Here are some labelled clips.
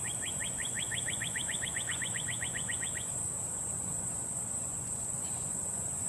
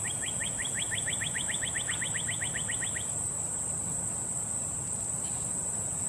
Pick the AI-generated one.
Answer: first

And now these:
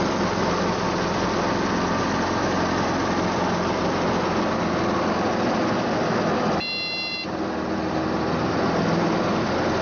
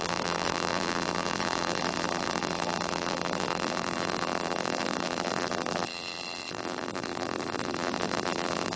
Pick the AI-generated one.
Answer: second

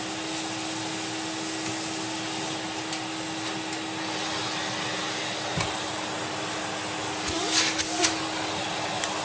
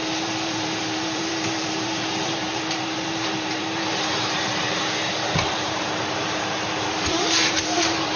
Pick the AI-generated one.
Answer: second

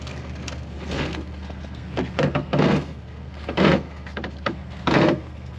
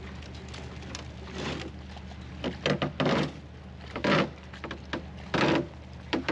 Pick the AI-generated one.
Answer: first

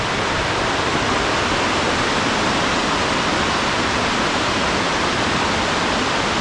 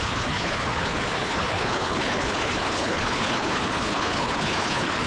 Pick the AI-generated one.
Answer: second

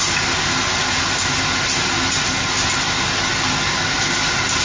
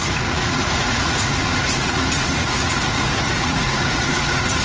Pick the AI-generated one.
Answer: second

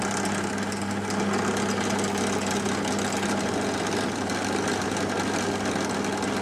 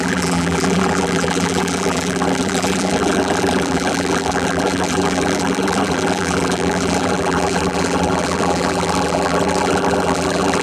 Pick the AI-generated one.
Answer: second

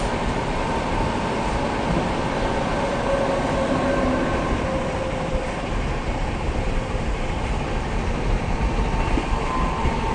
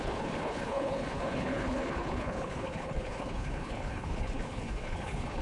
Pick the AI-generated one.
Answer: second